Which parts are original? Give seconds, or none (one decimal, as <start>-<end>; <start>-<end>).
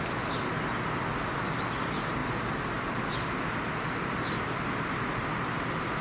0.0-6.0